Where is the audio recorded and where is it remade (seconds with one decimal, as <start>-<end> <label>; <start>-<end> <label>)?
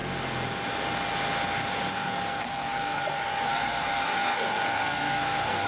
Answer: 0.0-1.9 recorded; 1.9-5.7 remade